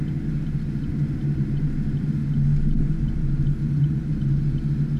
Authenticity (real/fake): real